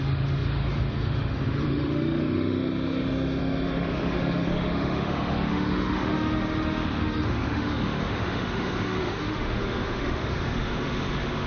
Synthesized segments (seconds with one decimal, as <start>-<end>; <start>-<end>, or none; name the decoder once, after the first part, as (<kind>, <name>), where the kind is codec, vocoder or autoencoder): 0.0-11.5 (autoencoder, DAC-VAE)